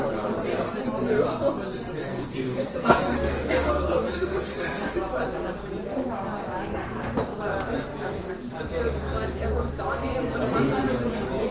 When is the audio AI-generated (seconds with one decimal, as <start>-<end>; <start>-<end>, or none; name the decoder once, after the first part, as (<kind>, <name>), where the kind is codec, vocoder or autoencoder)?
2.0-4.9 (codec, SNAC)